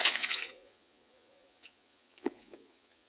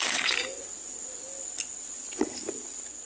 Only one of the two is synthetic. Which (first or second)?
first